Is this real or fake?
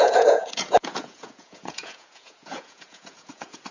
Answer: fake